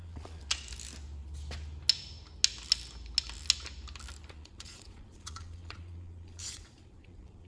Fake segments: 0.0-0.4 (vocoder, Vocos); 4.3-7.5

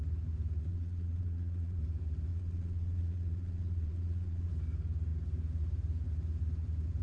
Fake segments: 0.7-1.8 (vocoder, Vocos); 2.3-4.5

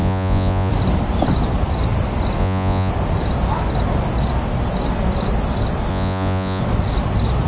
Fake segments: 0.0-0.7 (vocoder, Vocos); 2.4-2.9; 5.9-6.6

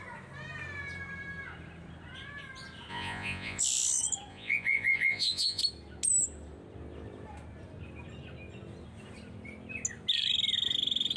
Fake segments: 2.9-3.6 (vocoder, Vocos); 4.3-5.6